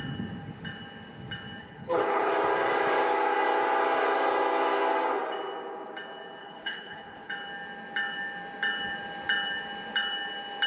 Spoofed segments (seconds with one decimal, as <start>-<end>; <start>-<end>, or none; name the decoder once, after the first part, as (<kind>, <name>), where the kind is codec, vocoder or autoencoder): 1.6-2.3 (codec, HILCodec); 6.4-7.3